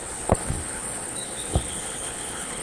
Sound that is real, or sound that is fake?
fake